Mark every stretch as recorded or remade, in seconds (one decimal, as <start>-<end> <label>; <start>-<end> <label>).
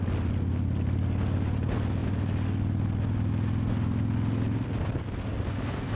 0.0-6.0 recorded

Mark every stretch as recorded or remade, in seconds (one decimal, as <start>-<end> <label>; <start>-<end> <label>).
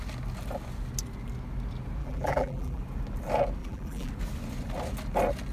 0.0-2.0 recorded; 2.0-2.8 remade; 2.8-3.6 recorded; 3.6-4.1 remade; 4.1-5.5 recorded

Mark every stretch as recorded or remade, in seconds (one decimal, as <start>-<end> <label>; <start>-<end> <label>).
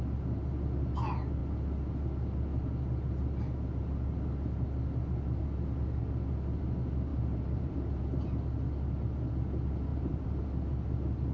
0.0-7.1 recorded; 7.1-8.0 remade; 8.0-9.9 recorded; 9.9-10.4 remade; 10.4-11.3 recorded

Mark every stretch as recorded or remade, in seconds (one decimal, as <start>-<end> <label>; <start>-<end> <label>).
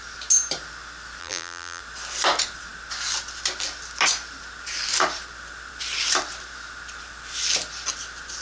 0.0-1.2 recorded; 1.2-1.8 remade; 1.8-8.4 recorded